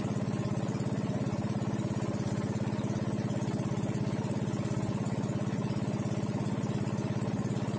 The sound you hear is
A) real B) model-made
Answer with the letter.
A